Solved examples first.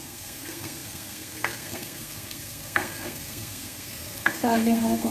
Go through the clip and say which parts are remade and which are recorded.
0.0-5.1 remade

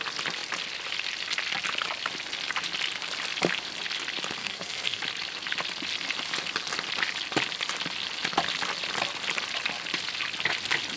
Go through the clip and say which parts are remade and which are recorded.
0.0-4.4 recorded; 4.4-5.0 remade; 5.0-11.0 recorded